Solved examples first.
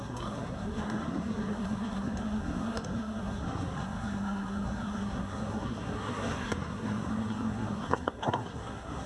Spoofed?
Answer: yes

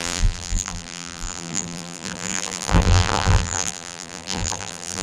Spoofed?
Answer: yes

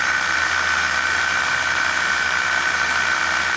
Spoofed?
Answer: no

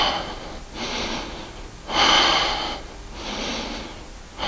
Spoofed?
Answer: no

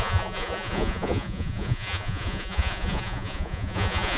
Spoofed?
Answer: yes